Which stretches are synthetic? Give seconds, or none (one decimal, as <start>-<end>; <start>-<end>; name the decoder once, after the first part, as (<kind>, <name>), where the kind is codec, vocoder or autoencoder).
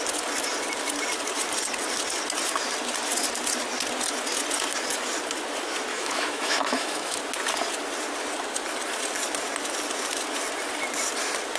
5.9-7.2 (autoencoder, DAC-VAE)